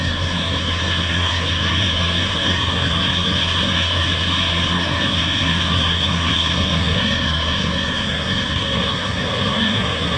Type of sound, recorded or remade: remade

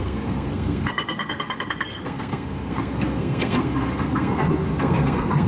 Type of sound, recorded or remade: remade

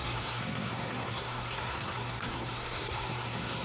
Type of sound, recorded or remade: remade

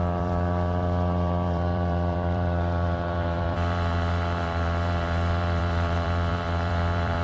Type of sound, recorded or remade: remade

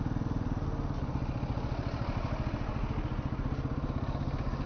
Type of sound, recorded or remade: recorded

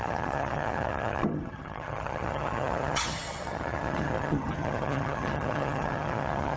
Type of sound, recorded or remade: remade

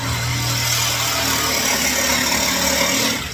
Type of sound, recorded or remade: recorded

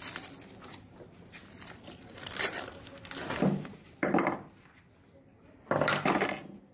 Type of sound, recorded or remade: recorded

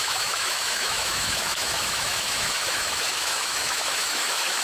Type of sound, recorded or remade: remade